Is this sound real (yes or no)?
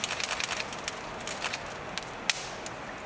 yes